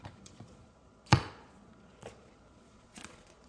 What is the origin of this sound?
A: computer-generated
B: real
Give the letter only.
A